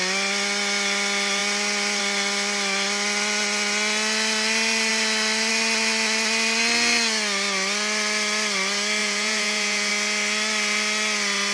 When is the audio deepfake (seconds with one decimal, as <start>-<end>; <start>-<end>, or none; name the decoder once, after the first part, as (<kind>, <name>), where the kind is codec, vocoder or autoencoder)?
9.0-9.9 (vocoder, Vocos)